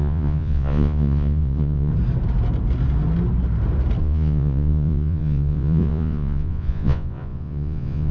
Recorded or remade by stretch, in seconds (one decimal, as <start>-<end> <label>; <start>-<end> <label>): 0.0-1.9 remade; 1.9-4.0 recorded; 4.0-8.1 remade